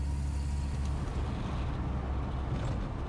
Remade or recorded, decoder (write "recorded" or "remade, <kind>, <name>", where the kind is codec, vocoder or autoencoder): recorded